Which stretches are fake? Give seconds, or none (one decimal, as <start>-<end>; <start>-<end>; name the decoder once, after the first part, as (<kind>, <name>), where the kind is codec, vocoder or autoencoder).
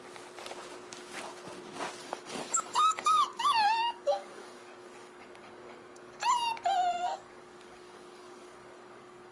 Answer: 2.0-6.2 (codec, DAC); 6.9-9.3